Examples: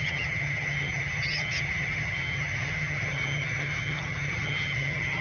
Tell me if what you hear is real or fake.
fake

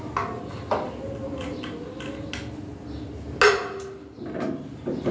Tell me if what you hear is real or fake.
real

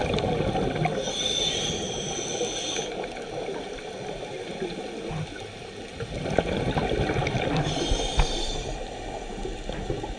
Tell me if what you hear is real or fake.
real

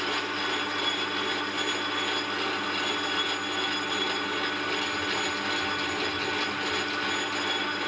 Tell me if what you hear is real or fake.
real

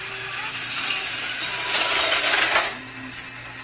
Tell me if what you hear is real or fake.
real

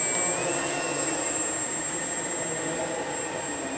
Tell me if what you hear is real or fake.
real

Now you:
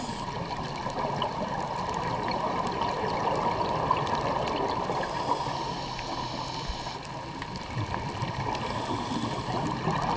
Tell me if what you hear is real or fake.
real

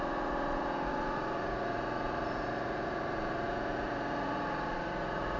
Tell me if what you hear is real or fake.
fake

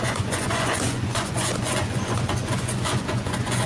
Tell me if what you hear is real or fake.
fake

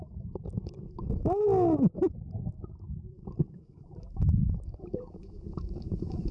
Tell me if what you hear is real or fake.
fake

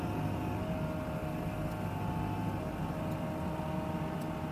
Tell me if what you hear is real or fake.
real